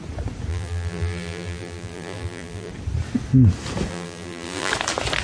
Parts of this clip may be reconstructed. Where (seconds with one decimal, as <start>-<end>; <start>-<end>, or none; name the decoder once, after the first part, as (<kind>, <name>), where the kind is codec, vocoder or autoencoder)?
0.5-2.7 (vocoder, BigVGAN v2); 3.9-4.7